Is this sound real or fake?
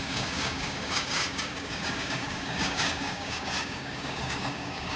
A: fake